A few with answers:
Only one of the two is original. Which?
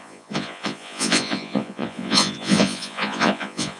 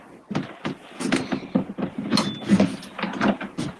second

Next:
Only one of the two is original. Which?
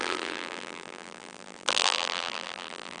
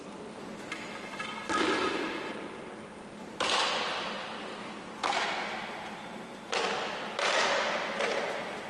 second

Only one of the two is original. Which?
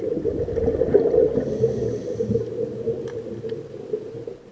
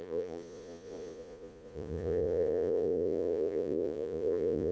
first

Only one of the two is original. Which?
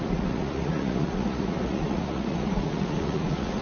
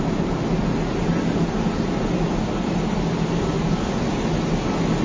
second